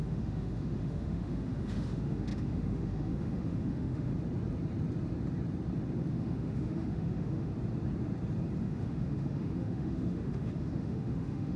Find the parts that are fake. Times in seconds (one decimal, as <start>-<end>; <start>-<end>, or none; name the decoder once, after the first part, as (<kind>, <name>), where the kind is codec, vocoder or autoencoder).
0.0-4.1 (autoencoder, DAC-VAE); 6.1-7.5; 8.6-11.6